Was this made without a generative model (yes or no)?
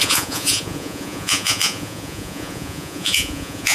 no